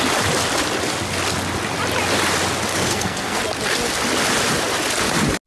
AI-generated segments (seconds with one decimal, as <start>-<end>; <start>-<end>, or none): 2.7-3.4